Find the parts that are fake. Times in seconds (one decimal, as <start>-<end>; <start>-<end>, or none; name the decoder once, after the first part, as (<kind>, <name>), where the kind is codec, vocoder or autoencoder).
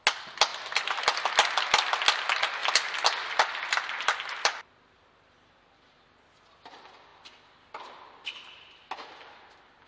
2.6-5.6 (vocoder, BigVGAN v2)